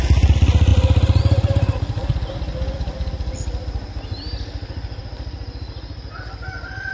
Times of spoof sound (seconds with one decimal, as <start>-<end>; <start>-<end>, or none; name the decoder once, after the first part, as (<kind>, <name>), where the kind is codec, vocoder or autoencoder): none